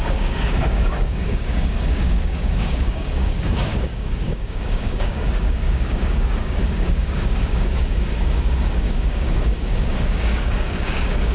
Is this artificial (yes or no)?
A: yes